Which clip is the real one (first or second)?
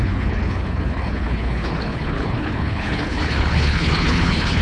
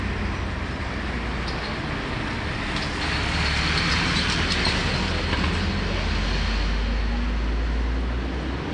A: second